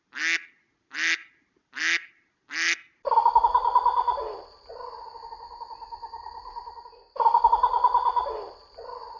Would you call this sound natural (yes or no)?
yes